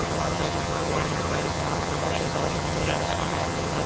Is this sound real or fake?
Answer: fake